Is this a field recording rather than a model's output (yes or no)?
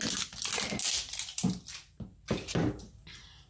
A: yes